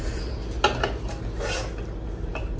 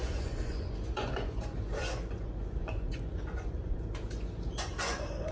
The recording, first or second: first